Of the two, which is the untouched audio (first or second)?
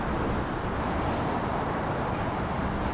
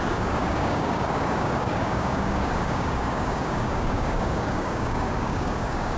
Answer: first